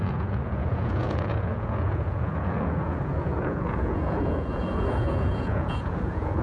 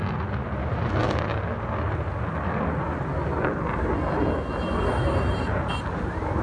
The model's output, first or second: first